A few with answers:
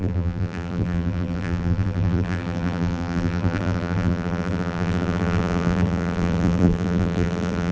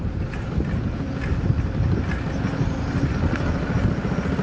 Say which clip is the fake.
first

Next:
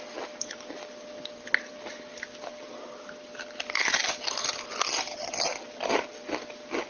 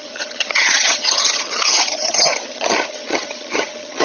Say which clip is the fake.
second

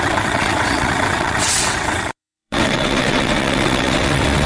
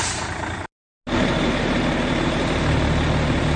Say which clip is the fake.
first